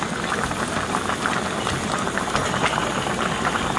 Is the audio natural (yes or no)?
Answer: yes